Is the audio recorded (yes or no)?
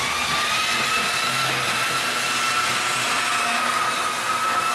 yes